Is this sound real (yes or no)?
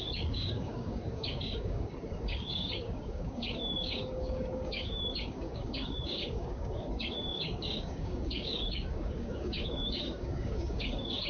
no